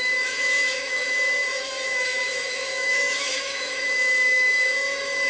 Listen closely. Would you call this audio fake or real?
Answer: fake